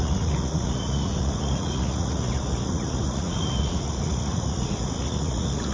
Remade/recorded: remade